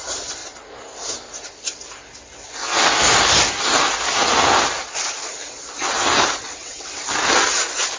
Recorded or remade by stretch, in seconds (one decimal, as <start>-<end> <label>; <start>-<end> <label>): 0.0-6.4 recorded; 6.4-7.0 remade; 7.0-8.0 recorded